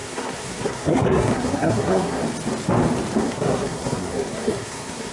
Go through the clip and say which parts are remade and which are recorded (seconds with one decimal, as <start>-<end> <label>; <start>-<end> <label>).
0.0-2.2 remade; 2.2-3.2 recorded; 3.2-5.1 remade

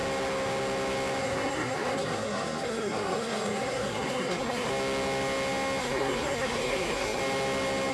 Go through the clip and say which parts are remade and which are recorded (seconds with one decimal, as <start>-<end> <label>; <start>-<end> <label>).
0.0-1.2 recorded; 1.2-4.7 remade; 4.7-5.8 recorded; 5.8-7.2 remade; 7.2-7.9 recorded

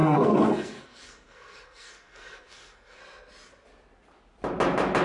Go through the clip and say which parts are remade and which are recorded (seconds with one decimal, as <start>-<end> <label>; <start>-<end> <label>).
0.0-3.0 remade; 3.0-5.0 recorded